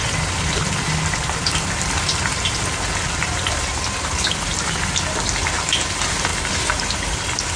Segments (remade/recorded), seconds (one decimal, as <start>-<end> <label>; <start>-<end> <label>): 0.0-7.6 recorded